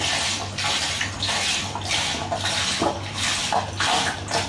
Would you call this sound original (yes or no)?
yes